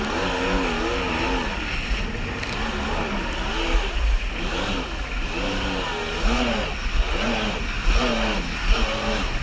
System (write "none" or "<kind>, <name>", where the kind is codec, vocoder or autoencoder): none